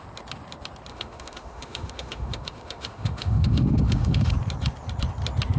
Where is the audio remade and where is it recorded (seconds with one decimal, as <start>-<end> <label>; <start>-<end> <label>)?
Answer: 0.0-0.9 recorded; 0.9-4.3 remade; 4.3-5.6 recorded